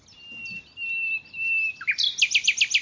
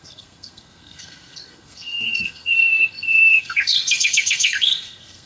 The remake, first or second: second